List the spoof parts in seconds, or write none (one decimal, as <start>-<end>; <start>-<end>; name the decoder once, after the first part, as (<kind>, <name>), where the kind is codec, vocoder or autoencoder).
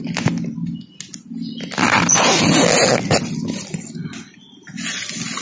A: none